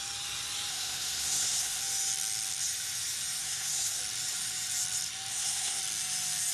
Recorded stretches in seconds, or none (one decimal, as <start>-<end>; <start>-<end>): 0.0-0.7; 1.8-3.4; 4.0-5.3; 5.8-6.5